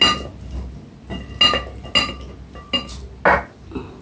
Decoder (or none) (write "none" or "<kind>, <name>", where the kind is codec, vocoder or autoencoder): none